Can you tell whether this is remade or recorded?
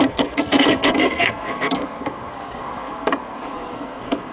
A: remade